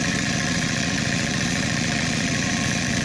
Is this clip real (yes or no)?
no